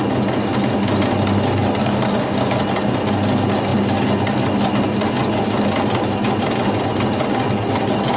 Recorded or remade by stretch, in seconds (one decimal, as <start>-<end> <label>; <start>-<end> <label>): 0.0-1.8 recorded; 1.8-2.6 remade; 2.6-8.2 recorded